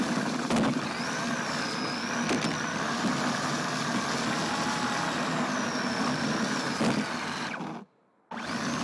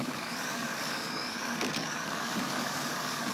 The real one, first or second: first